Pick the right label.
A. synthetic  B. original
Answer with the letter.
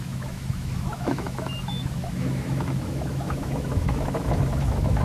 A